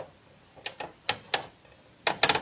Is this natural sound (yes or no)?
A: yes